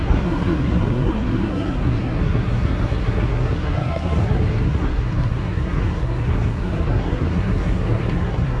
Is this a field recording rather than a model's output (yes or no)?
no